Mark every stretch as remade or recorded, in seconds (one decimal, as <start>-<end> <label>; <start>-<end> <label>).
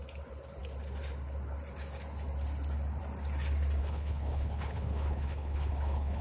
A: 0.0-3.8 recorded; 3.8-6.2 remade